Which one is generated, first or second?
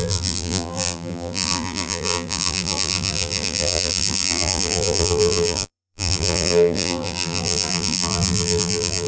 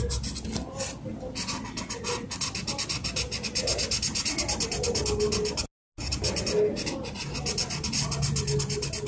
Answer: first